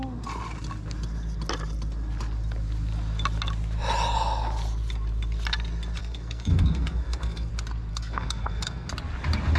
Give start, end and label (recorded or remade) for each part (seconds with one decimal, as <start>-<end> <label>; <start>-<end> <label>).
0.0-6.0 recorded; 6.0-7.5 remade; 7.5-7.9 recorded; 7.9-8.9 remade; 8.9-9.6 recorded